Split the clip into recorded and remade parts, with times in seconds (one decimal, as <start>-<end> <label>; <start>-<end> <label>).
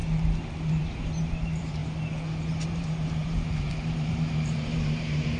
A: 0.0-0.7 recorded; 0.7-1.8 remade; 1.8-2.5 recorded; 2.5-5.4 remade